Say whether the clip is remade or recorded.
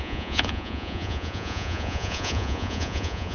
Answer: remade